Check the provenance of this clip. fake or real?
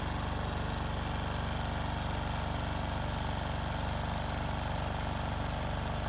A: real